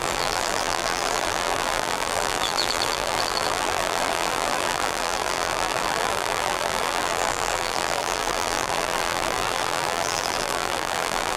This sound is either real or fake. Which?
fake